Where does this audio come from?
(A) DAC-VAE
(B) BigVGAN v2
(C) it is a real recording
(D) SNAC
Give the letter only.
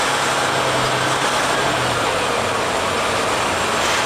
C